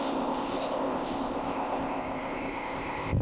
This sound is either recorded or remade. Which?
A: remade